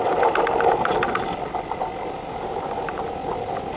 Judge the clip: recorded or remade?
recorded